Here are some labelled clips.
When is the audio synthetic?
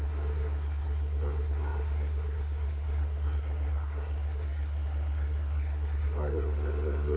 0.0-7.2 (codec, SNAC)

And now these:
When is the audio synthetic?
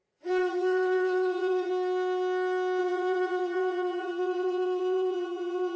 0.0-1.7 (vocoder, Vocos); 2.8-5.8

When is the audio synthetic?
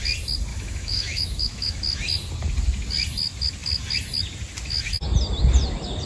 0.5-1.8 (autoencoder, DAC-VAE)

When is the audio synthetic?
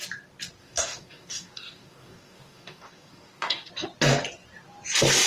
0.6-3.7 (codec, DAC)